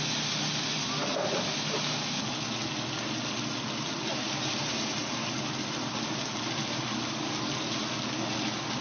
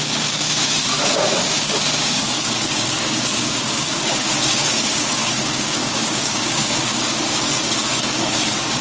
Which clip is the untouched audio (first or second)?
first